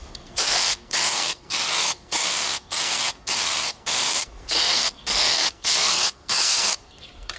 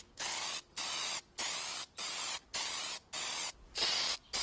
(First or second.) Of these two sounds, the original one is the second